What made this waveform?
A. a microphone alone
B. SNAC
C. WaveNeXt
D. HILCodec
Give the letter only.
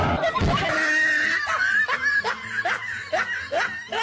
A